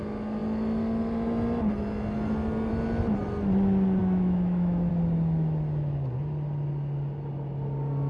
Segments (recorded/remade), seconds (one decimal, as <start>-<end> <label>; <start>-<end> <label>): 0.0-4.0 recorded; 4.0-4.9 remade; 4.9-8.1 recorded

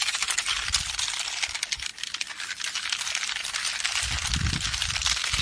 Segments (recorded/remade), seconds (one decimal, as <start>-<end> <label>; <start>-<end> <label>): 0.0-5.4 recorded